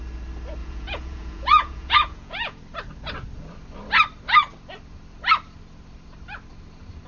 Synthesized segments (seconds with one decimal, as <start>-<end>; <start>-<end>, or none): 0.6-2.6

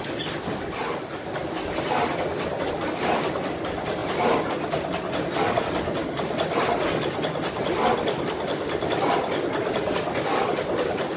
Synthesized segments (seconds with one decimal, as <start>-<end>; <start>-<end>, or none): none

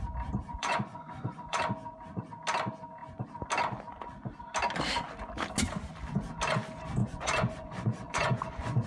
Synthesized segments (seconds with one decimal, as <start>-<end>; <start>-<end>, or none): 0.5-1.6; 7.0-8.9

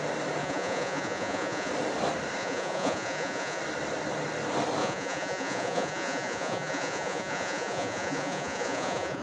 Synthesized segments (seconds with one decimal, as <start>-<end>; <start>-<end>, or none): 0.4-1.7; 2.4-3.6; 4.8-9.2

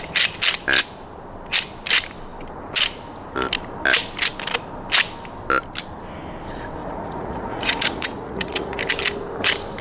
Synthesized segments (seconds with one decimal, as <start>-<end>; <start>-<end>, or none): 6.8-8.8